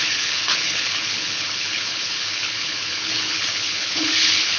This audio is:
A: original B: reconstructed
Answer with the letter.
B